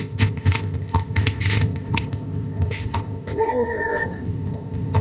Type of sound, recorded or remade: remade